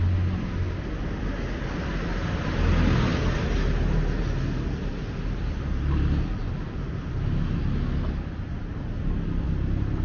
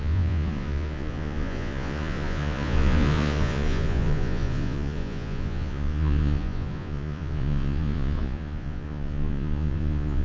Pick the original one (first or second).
first